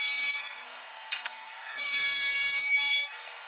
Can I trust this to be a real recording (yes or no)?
no